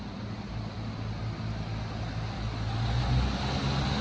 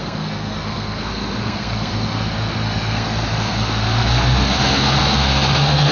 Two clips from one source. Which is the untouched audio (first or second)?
first